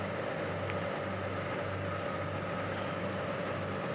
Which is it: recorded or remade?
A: recorded